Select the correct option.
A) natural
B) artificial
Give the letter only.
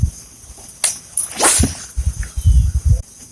A